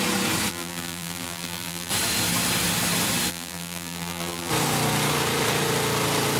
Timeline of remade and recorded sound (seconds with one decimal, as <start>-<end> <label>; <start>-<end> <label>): 0.0-0.5 recorded; 0.5-1.9 remade; 1.9-3.3 recorded; 3.3-4.5 remade; 4.5-6.4 recorded